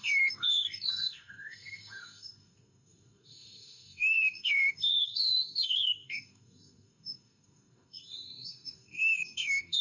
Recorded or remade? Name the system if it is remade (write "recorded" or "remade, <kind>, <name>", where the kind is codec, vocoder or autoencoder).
remade, codec, DAC